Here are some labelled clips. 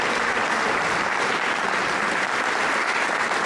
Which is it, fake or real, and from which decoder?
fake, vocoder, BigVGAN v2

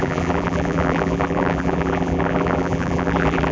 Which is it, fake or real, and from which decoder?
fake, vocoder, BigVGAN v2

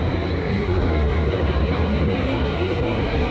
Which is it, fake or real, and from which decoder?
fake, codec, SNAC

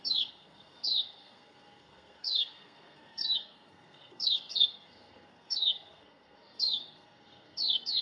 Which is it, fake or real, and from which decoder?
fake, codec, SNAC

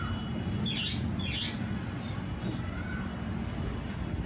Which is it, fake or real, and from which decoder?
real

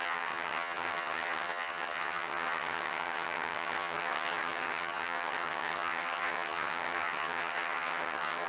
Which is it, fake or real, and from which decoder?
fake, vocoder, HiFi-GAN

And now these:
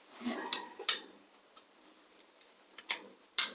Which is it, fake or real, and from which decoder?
fake, vocoder, BigVGAN v2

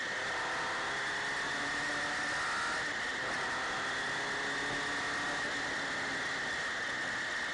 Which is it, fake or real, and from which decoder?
real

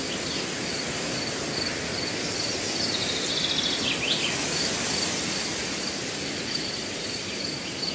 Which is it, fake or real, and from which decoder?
real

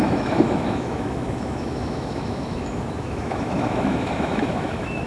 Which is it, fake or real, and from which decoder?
fake, autoencoder, DAC-VAE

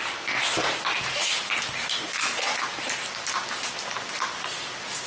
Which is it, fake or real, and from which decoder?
real